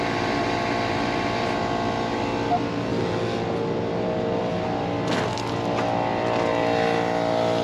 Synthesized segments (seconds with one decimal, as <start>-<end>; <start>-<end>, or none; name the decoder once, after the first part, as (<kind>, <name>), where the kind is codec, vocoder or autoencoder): none